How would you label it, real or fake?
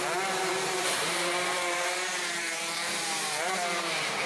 fake